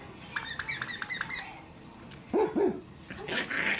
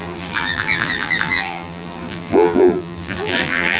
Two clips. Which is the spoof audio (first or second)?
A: second